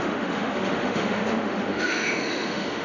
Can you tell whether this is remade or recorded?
remade